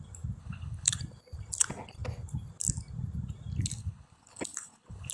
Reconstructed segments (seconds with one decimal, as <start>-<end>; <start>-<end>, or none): 0.4-1.0; 3.8-5.1